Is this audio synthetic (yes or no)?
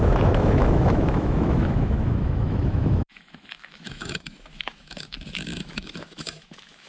yes